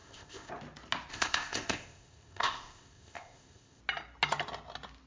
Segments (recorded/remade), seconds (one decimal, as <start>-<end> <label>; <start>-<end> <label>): 0.0-0.5 remade; 0.5-1.1 recorded; 1.1-3.8 remade; 3.8-5.1 recorded